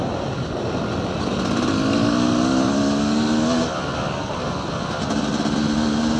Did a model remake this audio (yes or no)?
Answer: no